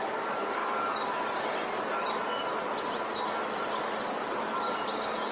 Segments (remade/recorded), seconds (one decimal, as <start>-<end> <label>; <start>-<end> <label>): 0.0-0.6 recorded; 0.6-3.0 remade; 3.0-5.3 recorded